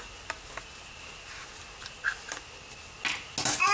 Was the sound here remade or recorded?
recorded